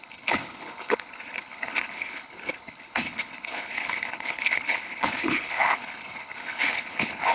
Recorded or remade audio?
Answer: remade